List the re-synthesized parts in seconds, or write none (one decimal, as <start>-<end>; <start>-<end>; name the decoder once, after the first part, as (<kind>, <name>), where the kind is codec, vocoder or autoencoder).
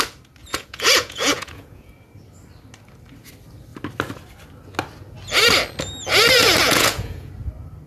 0.4-1.9 (vocoder, Vocos); 6.4-7.3